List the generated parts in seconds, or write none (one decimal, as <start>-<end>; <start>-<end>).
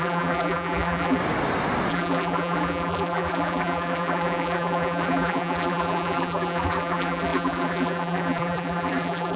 0.0-1.2; 1.9-9.4